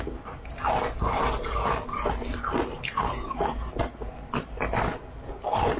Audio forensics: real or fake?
real